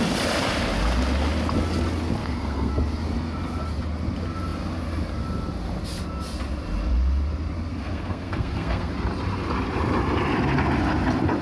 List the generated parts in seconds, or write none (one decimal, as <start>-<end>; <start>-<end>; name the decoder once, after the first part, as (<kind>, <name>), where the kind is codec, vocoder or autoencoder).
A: 2.2-2.7 (codec, SNAC); 7.7-8.9